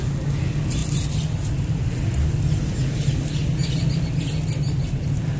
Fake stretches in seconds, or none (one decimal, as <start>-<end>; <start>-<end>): none